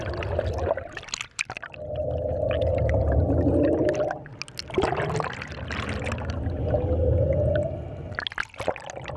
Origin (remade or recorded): recorded